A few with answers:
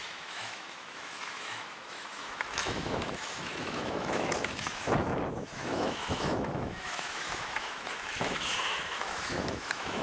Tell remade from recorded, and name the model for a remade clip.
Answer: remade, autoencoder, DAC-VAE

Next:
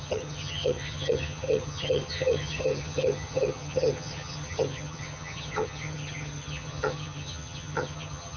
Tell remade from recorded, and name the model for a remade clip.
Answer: remade, vocoder, HiFi-GAN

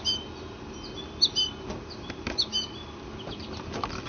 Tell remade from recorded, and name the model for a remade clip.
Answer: recorded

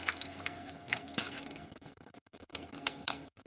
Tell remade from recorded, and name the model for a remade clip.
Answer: remade, codec, SNAC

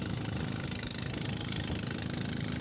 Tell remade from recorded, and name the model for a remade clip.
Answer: recorded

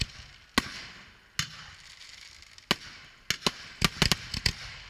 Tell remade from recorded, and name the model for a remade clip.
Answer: recorded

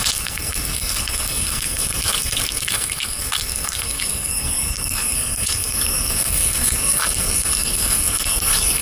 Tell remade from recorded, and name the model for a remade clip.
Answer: remade, codec, SNAC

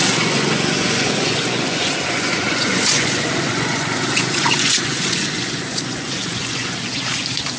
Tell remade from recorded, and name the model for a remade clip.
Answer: remade, vocoder, Vocos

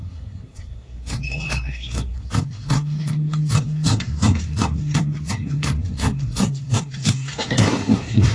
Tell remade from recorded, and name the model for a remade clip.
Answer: remade, codec, SNAC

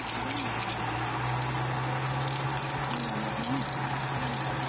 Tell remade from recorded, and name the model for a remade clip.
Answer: recorded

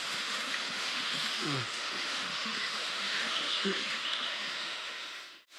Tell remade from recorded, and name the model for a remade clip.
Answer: remade, autoencoder, DAC-VAE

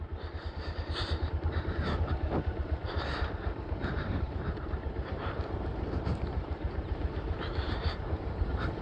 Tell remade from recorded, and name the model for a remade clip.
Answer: remade, vocoder, BigVGAN v2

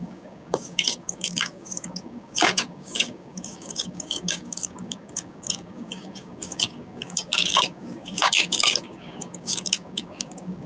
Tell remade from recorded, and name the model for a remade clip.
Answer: remade, codec, DAC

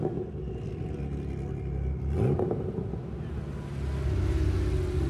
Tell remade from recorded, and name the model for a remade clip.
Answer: recorded